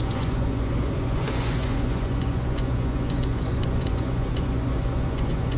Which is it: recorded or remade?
remade